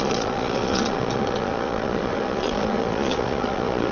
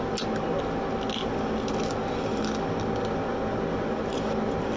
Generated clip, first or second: first